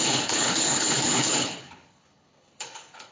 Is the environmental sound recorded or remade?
remade